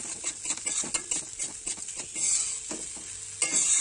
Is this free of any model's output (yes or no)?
yes